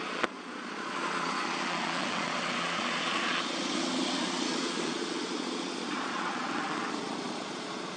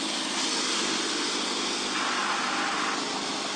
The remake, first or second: first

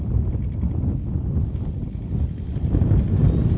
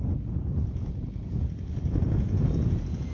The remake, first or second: second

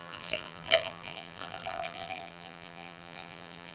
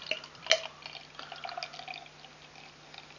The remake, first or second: first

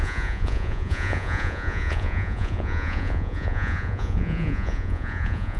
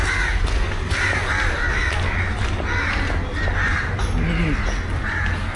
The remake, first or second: first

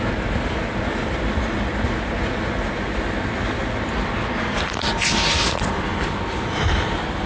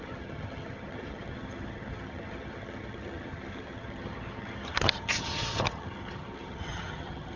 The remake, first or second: second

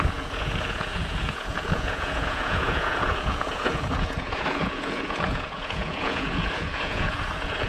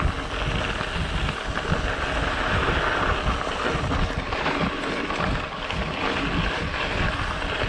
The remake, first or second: first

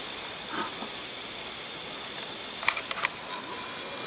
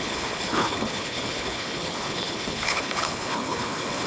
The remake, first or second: second